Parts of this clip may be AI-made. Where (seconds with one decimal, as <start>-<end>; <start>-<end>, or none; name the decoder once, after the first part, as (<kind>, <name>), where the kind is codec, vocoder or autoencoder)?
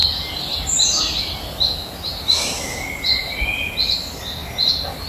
none